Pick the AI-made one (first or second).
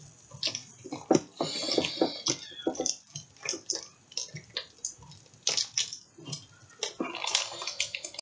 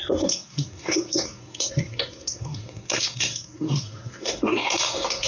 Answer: second